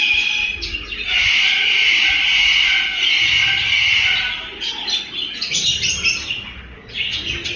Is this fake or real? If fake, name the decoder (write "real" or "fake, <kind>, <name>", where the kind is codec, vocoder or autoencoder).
real